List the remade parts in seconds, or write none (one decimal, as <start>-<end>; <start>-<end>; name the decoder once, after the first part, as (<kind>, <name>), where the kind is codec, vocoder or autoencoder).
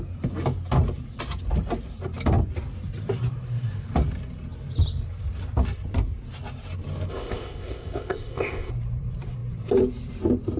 7.1-8.7 (codec, ZipCodec)